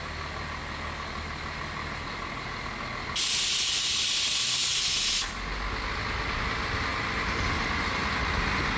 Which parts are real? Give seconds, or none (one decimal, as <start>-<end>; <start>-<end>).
0.0-8.8